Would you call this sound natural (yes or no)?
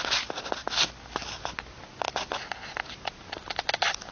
yes